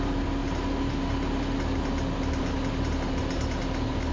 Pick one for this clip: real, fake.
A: real